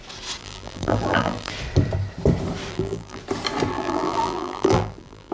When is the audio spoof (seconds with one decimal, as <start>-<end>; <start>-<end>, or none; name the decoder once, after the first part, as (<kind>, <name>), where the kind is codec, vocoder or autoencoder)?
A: 0.4-1.5 (vocoder, BigVGAN v2); 2.7-3.2; 3.7-5.3